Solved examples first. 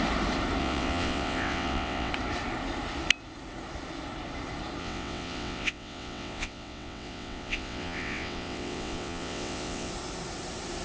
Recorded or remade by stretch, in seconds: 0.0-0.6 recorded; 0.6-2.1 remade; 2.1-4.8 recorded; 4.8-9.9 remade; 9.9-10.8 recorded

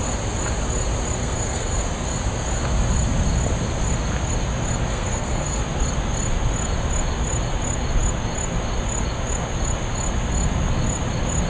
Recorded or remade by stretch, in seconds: 0.0-1.2 recorded; 1.2-1.8 remade; 1.8-4.9 recorded; 4.9-5.6 remade; 5.6-11.5 recorded